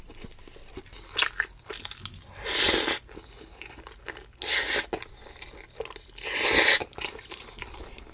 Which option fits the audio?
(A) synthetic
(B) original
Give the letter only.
B